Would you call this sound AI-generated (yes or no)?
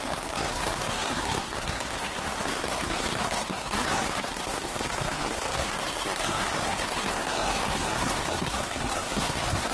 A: yes